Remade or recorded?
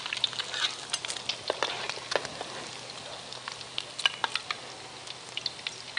recorded